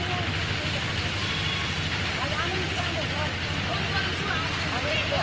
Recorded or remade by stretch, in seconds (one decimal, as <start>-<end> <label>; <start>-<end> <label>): 0.0-5.2 recorded

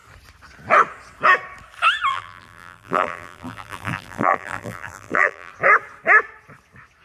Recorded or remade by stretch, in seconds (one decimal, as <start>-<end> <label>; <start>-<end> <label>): 0.0-2.1 recorded; 2.1-5.5 remade; 5.5-7.0 recorded

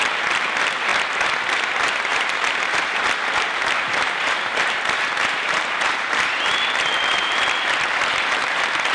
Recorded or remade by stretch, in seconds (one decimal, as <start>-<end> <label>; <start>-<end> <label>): 0.0-2.1 recorded; 2.1-6.6 remade; 6.6-8.9 recorded

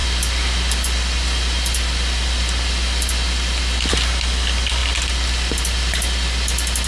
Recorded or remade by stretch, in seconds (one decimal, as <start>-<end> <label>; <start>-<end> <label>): 0.0-6.9 recorded

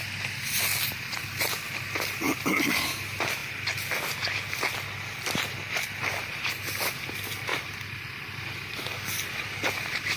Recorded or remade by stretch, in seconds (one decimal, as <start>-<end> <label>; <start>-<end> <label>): 0.0-0.7 recorded; 0.7-1.6 remade; 1.6-7.5 recorded; 7.5-8.3 remade; 8.3-10.2 recorded

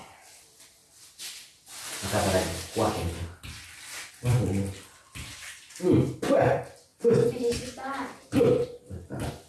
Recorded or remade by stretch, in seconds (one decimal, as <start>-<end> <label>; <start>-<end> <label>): 0.0-0.8 remade; 0.8-4.1 recorded; 4.1-6.9 remade; 6.9-8.2 recorded; 8.2-9.5 remade